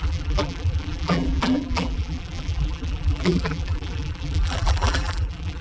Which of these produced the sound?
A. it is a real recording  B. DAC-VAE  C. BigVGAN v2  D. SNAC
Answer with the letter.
C